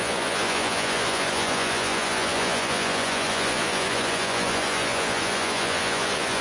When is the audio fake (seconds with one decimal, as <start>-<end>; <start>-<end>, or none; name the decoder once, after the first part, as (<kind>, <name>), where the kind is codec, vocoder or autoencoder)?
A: 0.0-6.4 (vocoder, Vocos)